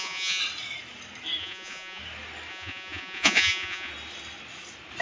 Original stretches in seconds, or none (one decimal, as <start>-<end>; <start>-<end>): 0.4-1.4; 2.0-2.5; 3.9-5.0